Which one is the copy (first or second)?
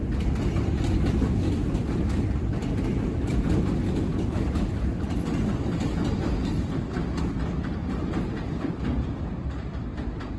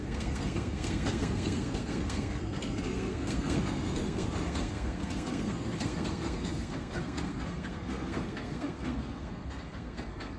second